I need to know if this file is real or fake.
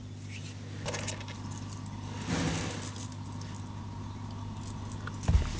real